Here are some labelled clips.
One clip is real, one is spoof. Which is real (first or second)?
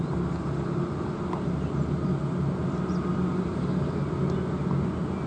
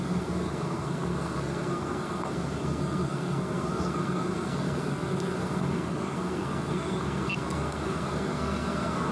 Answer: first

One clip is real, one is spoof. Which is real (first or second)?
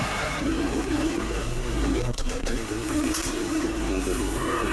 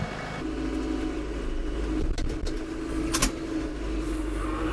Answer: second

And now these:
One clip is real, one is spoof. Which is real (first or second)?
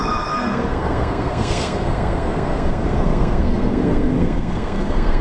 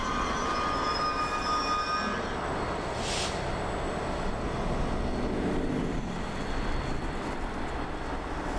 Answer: second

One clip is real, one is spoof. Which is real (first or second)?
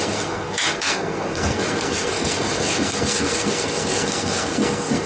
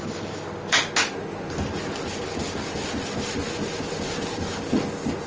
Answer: second